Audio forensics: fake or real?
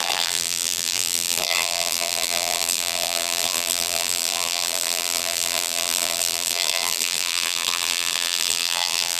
fake